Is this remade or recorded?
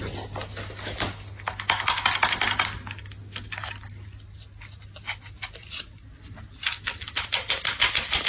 recorded